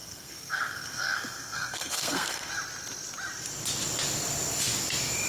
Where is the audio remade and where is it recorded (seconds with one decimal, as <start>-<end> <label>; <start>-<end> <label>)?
0.0-2.5 remade; 2.5-5.3 recorded